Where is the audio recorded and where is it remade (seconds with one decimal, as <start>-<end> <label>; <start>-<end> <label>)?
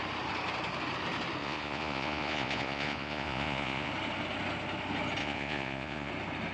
0.0-1.4 recorded; 1.4-3.9 remade; 3.9-5.2 recorded; 5.2-6.1 remade; 6.1-6.5 recorded